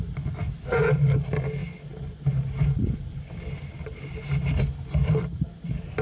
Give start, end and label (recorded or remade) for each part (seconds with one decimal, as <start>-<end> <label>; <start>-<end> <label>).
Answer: 0.0-6.0 recorded